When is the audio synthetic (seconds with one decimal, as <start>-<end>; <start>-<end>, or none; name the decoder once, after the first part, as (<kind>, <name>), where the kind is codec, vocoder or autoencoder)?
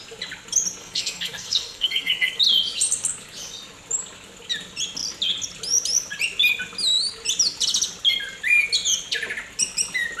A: 0.8-2.4 (codec, SNAC)